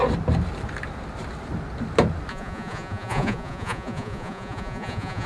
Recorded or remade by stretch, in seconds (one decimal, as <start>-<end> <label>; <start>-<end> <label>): 0.0-2.3 recorded; 2.3-5.3 remade